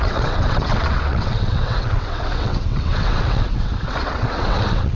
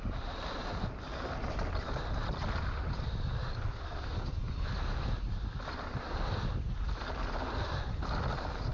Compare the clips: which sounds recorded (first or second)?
second